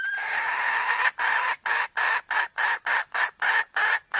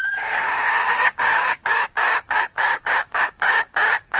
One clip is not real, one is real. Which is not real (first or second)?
second